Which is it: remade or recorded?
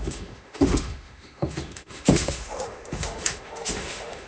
remade